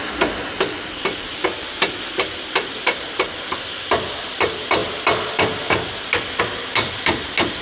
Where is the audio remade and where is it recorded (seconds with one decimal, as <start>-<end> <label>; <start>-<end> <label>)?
0.0-4.8 remade; 4.8-6.4 recorded; 6.4-7.6 remade